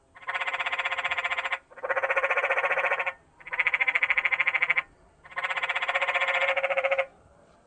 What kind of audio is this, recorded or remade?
remade